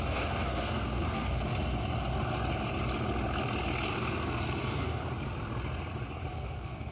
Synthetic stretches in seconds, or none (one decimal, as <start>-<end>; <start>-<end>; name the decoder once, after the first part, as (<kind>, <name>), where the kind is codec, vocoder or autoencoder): 0.0-1.4 (codec, SNAC); 3.9-5.0; 6.3-6.9